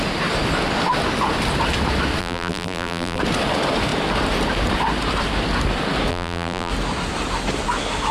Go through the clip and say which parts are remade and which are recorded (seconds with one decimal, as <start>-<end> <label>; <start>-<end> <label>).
0.0-2.2 recorded; 2.2-3.2 remade; 3.2-6.1 recorded; 6.1-6.7 remade; 6.7-8.1 recorded